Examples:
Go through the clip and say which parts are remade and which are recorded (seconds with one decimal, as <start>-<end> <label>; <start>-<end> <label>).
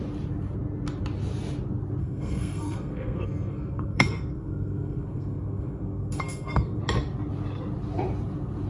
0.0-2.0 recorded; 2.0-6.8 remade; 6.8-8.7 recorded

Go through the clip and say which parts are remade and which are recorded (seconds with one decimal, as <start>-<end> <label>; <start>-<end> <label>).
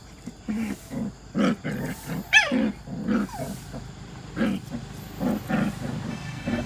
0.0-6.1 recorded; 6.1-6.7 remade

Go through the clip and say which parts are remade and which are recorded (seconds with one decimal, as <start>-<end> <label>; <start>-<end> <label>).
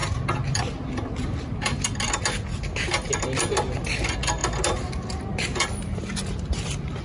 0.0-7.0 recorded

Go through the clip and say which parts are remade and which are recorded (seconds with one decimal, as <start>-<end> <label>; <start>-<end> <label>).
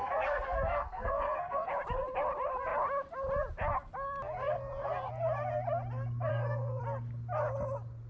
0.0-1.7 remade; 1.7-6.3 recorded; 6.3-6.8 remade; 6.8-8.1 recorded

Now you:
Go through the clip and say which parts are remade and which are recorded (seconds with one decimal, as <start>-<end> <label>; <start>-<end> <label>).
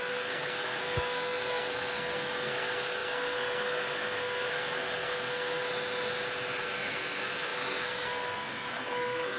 0.0-5.6 remade; 5.6-6.6 recorded; 6.6-9.4 remade